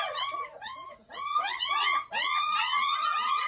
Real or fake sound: fake